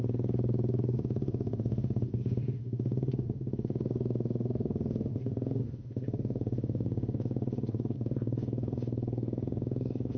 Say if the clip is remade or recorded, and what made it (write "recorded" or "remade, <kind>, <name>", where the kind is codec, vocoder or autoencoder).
remade, autoencoder, DAC-VAE